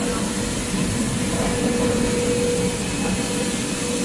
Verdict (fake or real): real